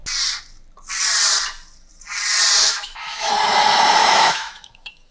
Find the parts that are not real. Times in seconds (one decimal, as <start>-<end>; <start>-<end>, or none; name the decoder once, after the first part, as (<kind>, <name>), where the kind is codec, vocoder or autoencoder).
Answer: 2.6-3.3 (autoencoder, DAC-VAE); 4.0-5.1